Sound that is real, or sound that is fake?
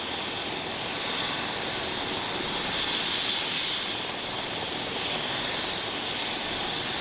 real